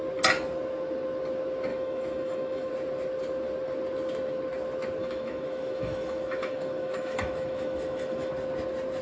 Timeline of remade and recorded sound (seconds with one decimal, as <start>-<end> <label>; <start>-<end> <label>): 0.0-1.7 recorded; 1.7-2.7 remade; 2.7-5.0 recorded; 5.0-8.3 remade; 8.3-9.0 recorded